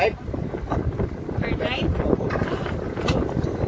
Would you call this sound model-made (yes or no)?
no